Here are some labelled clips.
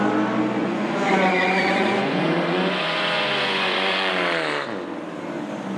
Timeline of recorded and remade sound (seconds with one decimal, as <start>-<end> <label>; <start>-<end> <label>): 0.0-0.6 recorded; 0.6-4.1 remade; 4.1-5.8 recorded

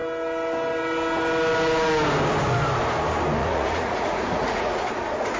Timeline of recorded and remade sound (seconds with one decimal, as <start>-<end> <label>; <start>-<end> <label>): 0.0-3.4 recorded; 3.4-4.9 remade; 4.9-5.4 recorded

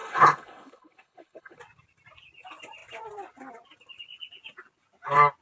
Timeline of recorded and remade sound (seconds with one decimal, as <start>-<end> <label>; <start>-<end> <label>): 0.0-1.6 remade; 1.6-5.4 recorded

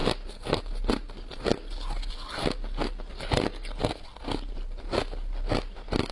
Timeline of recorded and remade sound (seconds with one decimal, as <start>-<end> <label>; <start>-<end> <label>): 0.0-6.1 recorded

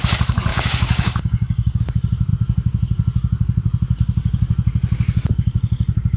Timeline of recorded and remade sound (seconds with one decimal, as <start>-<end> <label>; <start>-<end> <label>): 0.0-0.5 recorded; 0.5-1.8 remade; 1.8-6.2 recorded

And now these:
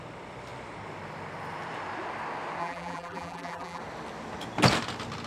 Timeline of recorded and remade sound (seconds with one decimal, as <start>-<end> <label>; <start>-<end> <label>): 0.0-2.6 recorded; 2.6-3.8 remade; 3.8-5.3 recorded